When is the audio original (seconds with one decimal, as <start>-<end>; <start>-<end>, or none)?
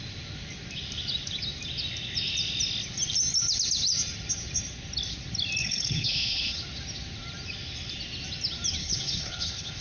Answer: 0.0-5.6; 6.6-8.8